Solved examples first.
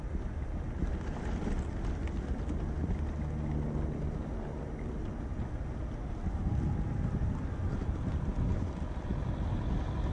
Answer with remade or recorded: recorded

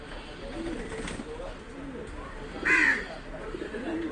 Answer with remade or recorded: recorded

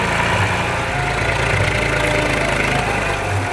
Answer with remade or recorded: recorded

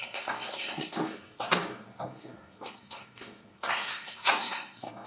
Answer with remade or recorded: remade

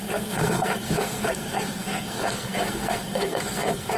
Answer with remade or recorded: remade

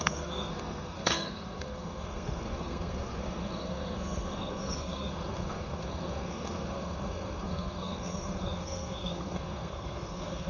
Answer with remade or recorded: remade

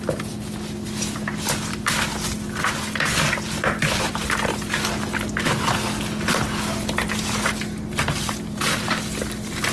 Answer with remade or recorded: recorded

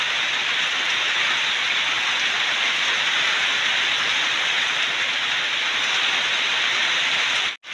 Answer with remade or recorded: recorded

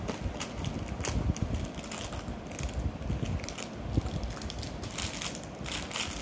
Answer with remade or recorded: recorded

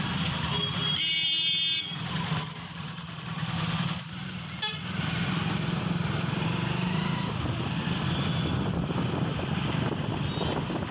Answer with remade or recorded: recorded